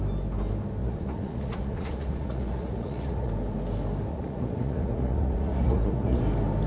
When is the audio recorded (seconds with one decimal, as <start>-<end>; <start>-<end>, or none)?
0.0-0.8; 3.3-4.1; 6.2-6.7